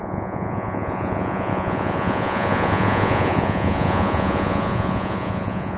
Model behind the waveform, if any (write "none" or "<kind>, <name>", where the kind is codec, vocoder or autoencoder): vocoder, Vocos